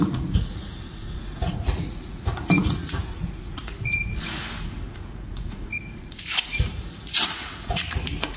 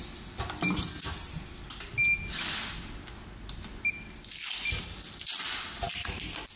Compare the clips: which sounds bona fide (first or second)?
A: second